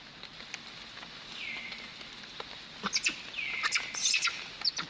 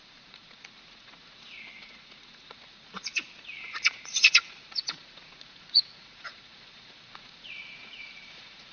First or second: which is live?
first